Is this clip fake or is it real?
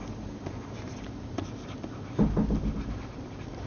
real